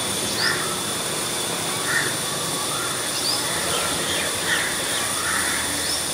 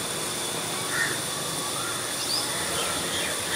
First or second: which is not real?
first